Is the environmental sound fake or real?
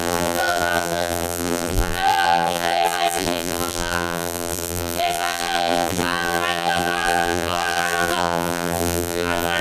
fake